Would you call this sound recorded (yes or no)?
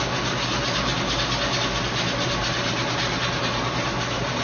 yes